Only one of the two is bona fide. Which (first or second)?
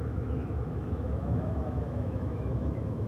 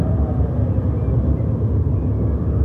second